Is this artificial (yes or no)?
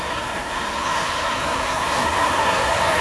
yes